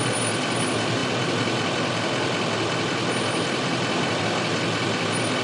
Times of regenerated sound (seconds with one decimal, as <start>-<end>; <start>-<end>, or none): none